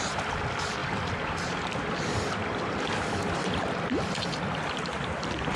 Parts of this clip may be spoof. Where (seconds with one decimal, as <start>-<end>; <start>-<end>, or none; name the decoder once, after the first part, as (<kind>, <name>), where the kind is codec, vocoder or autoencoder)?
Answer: 0.8-3.8 (vocoder, BigVGAN v2)